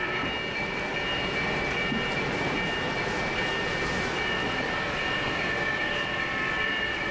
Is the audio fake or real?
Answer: fake